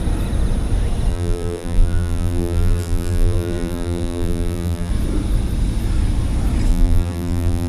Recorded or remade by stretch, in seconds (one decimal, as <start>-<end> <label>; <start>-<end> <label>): 0.0-1.1 recorded; 1.1-4.9 remade; 4.9-6.7 recorded; 6.7-7.7 remade